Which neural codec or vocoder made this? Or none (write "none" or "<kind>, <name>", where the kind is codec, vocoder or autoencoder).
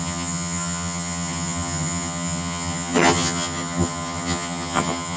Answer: vocoder, HiFi-GAN